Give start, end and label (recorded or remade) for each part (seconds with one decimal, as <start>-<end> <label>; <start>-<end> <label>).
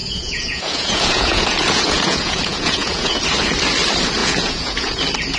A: 0.0-3.2 remade; 3.2-4.2 recorded; 4.2-5.0 remade; 5.0-5.4 recorded